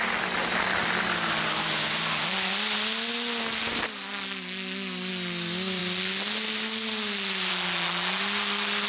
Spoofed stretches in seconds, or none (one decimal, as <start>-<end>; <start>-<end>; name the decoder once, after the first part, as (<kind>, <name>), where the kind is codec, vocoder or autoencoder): none